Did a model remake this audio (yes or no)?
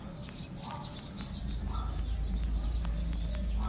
no